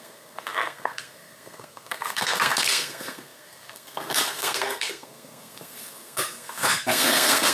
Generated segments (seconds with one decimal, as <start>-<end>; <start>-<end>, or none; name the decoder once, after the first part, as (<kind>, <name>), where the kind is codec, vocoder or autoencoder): 0.0-7.5 (codec, SNAC)